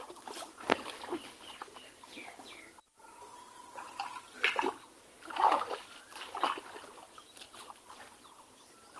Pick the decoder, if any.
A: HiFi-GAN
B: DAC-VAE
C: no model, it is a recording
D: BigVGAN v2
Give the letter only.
C